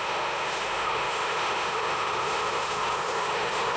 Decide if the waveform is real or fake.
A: fake